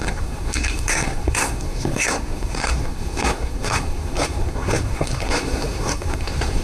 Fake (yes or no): yes